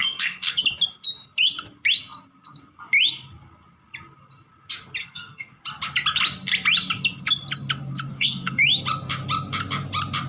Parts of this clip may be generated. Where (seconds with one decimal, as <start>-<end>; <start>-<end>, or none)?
0.0-0.6; 5.0-5.6; 8.1-8.6